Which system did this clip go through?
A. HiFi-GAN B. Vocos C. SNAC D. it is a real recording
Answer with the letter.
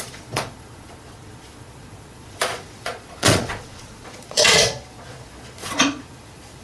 B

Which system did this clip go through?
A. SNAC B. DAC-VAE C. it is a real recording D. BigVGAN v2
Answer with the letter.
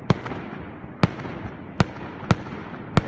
C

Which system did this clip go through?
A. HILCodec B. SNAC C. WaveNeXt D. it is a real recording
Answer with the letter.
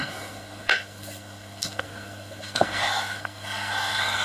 B